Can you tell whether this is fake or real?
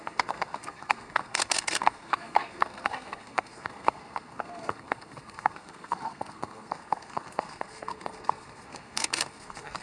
fake